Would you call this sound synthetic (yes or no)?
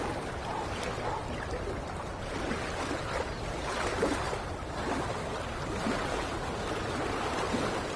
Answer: no